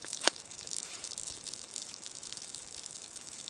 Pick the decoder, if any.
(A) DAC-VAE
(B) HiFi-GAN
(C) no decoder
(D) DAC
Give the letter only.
A